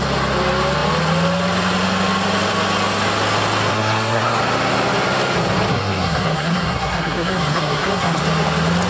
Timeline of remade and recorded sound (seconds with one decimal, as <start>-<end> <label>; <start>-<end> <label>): 0.0-3.7 recorded; 3.7-4.4 remade; 4.4-5.7 recorded; 5.7-8.2 remade; 8.2-8.9 recorded

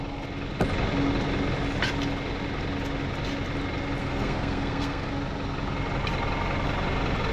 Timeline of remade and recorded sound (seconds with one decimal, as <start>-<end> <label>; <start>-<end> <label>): 0.0-4.0 recorded; 4.0-5.1 remade; 5.1-7.3 recorded

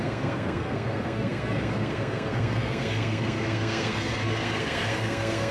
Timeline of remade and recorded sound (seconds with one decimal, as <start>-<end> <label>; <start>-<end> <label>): 0.0-5.5 remade

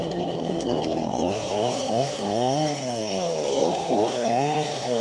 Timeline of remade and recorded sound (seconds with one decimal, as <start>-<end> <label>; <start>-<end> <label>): 0.0-5.0 remade